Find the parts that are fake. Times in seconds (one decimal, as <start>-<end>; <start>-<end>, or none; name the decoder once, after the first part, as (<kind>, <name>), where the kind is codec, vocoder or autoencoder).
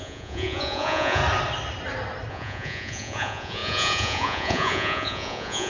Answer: 0.0-1.2 (vocoder, Vocos); 2.3-5.7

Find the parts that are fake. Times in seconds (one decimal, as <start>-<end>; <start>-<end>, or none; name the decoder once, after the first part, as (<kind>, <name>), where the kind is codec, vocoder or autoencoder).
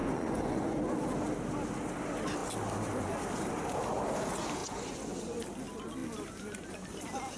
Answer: 0.0-0.8 (vocoder, Vocos); 4.6-5.1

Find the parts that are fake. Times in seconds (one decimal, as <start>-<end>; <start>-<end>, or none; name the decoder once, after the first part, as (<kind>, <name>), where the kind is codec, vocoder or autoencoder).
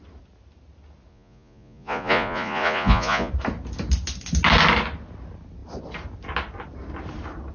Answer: 1.1-3.3 (vocoder, Vocos)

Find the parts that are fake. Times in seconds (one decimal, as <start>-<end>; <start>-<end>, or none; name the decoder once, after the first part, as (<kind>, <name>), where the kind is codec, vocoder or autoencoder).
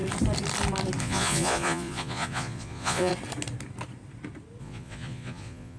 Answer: 1.0-3.1 (vocoder, Vocos); 4.6-5.8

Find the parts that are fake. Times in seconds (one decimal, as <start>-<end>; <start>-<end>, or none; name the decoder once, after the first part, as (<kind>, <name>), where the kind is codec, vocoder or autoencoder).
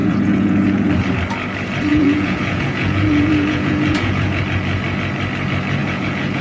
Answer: 0.0-0.9 (vocoder, Vocos); 1.9-4.4; 5.8-6.4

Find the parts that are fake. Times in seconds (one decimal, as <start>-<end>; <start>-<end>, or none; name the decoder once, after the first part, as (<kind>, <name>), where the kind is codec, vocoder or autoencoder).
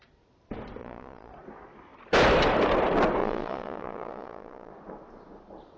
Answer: 0.8-1.3 (vocoder, Vocos); 3.2-4.7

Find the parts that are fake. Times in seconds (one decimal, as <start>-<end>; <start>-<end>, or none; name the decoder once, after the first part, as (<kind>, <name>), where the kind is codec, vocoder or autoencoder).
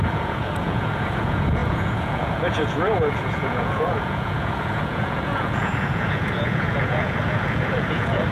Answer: 0.0-8.3 (vocoder, Vocos)